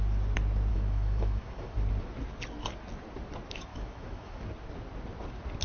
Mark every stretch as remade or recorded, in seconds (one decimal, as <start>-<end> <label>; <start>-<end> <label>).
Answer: 0.0-0.7 recorded; 0.7-1.7 remade; 1.7-3.7 recorded; 3.7-4.4 remade; 4.4-5.6 recorded